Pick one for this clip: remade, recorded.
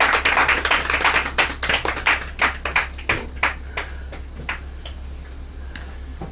recorded